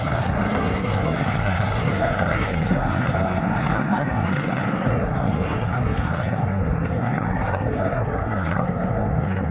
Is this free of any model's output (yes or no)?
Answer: no